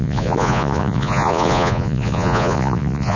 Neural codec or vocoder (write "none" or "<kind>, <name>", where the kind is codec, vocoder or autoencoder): vocoder, Vocos